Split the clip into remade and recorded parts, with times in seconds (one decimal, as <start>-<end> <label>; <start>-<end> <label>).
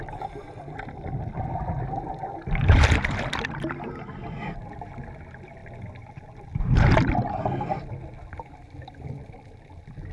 0.0-10.1 recorded